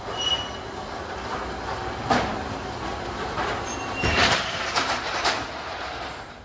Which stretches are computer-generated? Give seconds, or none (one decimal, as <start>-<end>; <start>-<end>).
none